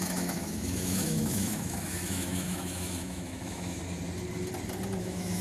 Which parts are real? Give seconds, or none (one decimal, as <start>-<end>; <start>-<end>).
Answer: 3.8-5.0